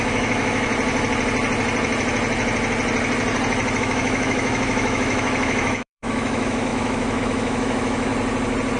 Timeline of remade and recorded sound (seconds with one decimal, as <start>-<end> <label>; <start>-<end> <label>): 0.0-0.7 remade; 0.7-3.8 recorded; 3.8-8.1 remade; 8.1-8.8 recorded